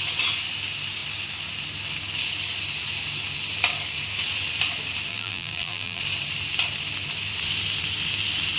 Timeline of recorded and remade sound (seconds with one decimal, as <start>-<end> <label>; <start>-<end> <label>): 0.0-5.1 recorded; 5.1-6.0 remade; 6.0-8.6 recorded